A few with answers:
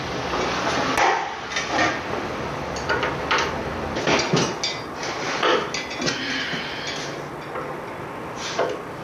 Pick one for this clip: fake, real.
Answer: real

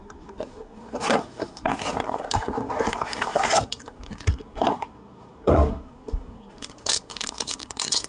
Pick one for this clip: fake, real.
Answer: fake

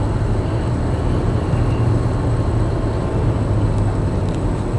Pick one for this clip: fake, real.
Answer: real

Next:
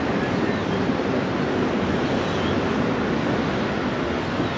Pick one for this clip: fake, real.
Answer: real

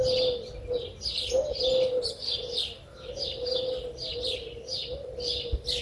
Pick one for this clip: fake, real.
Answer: real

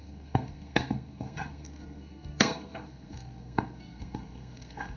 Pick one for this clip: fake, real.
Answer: fake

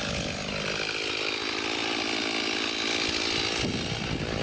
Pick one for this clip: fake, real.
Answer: real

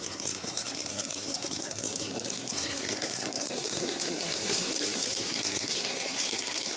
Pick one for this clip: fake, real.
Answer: fake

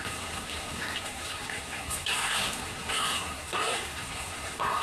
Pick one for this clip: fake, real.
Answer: fake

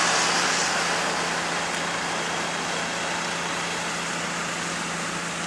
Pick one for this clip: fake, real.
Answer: real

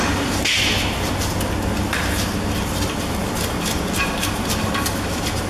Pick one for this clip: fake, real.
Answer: real